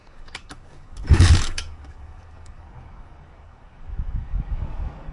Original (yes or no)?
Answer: no